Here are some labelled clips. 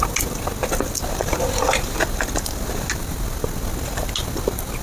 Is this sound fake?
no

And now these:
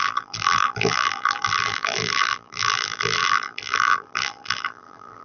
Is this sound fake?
yes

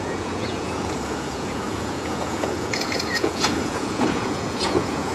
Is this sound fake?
yes